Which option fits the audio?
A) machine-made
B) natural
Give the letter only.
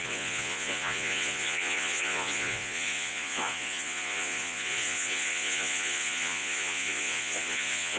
A